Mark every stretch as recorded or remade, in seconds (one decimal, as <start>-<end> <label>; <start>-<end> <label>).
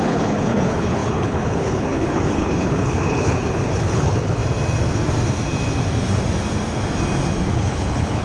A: 0.0-4.4 remade; 4.4-7.5 recorded; 7.5-8.2 remade